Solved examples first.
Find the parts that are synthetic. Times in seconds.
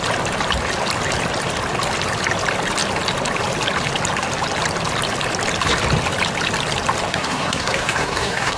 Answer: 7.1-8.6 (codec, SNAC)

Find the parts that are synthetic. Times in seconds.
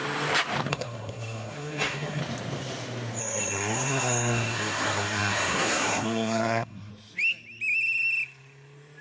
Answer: 0.7-2.2 (codec, SNAC); 3.2-6.9